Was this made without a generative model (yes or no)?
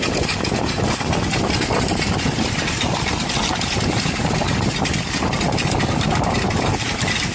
yes